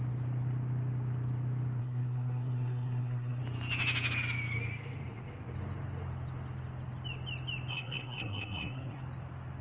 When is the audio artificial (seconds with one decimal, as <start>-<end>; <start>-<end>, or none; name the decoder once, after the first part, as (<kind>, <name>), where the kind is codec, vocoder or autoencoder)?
1.8-3.4 (codec, SNAC); 7.7-9.0